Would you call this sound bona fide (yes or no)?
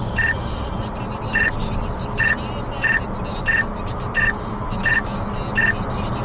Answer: yes